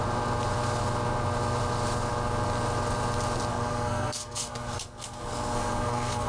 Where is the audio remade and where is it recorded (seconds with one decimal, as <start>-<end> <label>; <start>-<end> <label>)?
0.0-3.5 recorded; 3.5-6.3 remade